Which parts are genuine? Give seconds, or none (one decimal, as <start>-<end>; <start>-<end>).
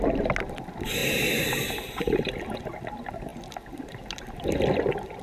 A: 0.0-1.0; 2.6-5.2